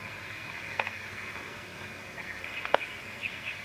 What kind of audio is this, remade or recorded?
remade